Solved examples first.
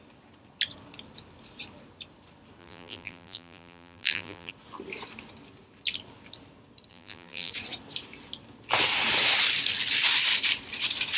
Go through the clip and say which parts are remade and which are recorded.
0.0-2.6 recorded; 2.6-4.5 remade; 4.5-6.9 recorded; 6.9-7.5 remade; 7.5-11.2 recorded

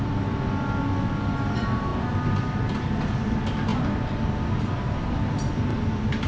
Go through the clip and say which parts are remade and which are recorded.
0.0-6.3 recorded

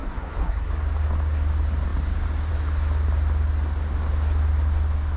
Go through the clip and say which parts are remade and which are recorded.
0.0-0.7 remade; 0.7-5.2 recorded

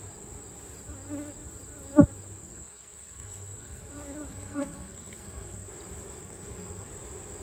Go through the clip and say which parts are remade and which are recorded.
0.0-2.4 recorded; 2.4-3.9 remade; 3.9-4.3 recorded; 4.3-5.7 remade; 5.7-6.2 recorded; 6.2-6.9 remade; 6.9-7.4 recorded